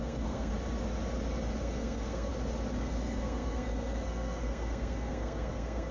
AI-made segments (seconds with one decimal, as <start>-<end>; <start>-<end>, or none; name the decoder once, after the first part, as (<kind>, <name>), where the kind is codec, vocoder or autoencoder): 0.0-0.5 (codec, SNAC); 1.6-2.3; 2.8-5.9